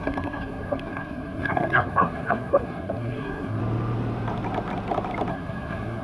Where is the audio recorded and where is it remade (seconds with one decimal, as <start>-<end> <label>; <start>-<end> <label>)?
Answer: 0.0-3.6 remade; 3.6-5.3 recorded; 5.3-6.0 remade